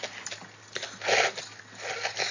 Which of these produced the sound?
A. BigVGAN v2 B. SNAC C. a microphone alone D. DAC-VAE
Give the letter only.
C